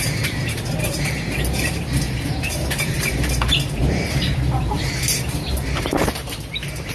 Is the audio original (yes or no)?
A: no